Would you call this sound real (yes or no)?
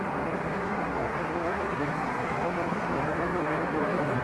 no